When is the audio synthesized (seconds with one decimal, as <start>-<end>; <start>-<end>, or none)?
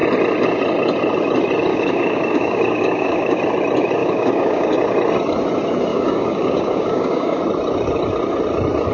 1.7-3.4; 4.0-4.7; 5.9-7.4